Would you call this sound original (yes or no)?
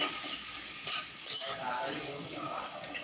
no